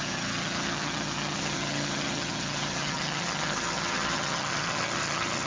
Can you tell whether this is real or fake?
fake